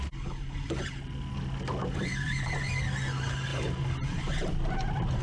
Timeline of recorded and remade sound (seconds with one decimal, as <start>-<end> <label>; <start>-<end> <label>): 0.0-2.1 recorded; 2.1-2.7 remade; 2.7-3.5 recorded; 3.5-5.2 remade